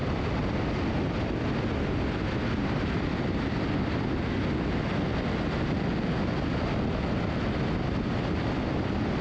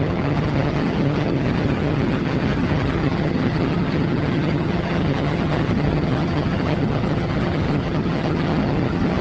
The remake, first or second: second